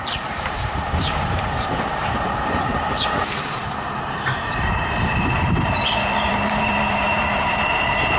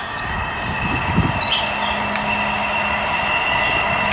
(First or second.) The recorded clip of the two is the second